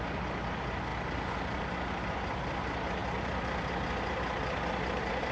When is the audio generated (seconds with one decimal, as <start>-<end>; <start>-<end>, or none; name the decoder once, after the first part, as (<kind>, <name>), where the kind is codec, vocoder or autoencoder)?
none